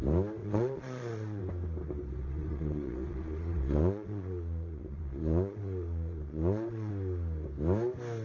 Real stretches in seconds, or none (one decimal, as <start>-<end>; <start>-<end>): 0.0-0.4; 1.4-2.2; 6.9-8.2